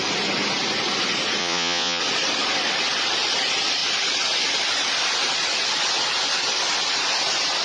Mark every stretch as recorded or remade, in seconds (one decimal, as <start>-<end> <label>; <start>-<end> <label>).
0.0-1.4 recorded; 1.4-2.0 remade; 2.0-7.6 recorded